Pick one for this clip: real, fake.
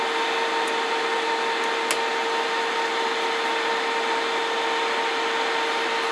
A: real